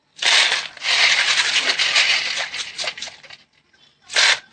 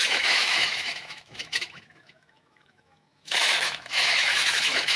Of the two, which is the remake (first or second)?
second